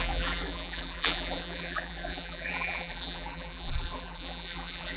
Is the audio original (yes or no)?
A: no